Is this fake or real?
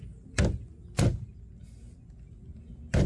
real